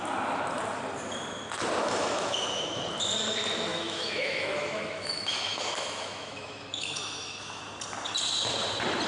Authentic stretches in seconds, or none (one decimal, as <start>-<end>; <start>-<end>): 0.0-1.8; 2.8-3.7; 7.6-9.1